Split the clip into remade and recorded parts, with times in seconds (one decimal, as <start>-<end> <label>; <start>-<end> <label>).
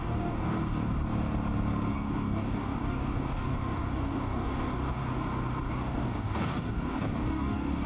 0.0-1.0 remade; 1.0-1.9 recorded; 1.9-5.0 remade; 5.0-5.7 recorded; 5.7-7.9 remade